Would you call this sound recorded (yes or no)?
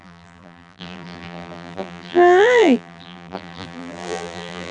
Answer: no